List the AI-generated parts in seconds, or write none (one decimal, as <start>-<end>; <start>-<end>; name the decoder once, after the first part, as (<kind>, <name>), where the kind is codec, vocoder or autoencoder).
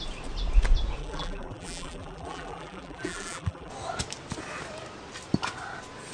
1.0-3.7 (vocoder, BigVGAN v2)